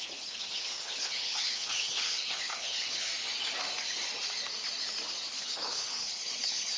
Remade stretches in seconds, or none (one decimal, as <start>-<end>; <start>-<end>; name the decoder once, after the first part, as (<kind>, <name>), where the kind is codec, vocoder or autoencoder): 0.0-3.1 (codec, HILCodec); 5.3-6.8